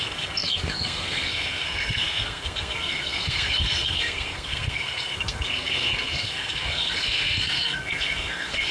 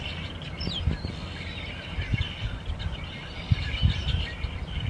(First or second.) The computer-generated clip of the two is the first